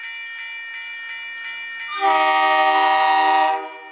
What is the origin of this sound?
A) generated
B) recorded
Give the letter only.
B